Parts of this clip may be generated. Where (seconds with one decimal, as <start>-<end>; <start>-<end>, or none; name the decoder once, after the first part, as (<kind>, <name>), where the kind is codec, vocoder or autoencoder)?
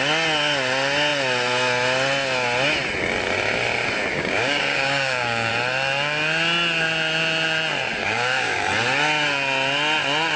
4.1-5.5 (codec, DAC); 8.0-8.6